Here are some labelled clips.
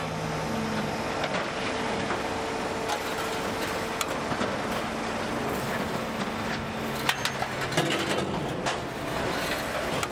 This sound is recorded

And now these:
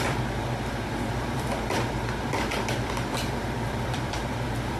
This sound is remade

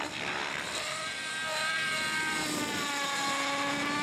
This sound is recorded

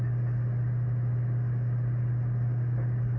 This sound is recorded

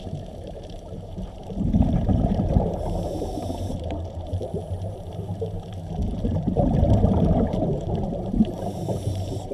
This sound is remade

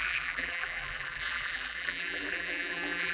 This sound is remade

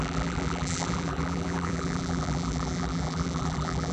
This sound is remade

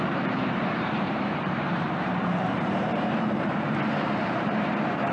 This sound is remade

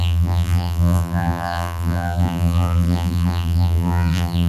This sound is remade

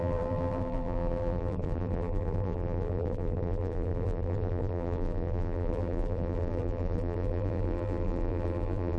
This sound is remade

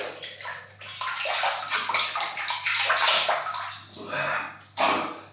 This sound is recorded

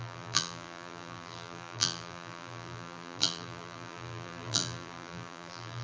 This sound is remade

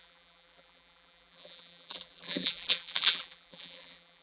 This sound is remade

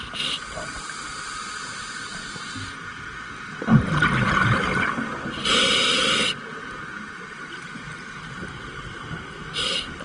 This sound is recorded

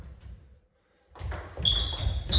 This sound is recorded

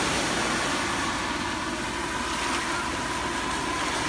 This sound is recorded